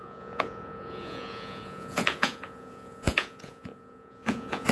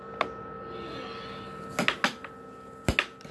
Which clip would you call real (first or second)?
second